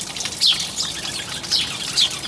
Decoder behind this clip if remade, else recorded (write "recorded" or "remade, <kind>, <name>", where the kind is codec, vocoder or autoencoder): recorded